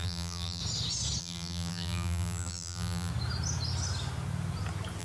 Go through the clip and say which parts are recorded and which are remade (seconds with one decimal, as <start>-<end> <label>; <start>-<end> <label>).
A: 0.0-0.6 remade; 0.6-1.2 recorded; 1.2-3.1 remade; 3.1-5.0 recorded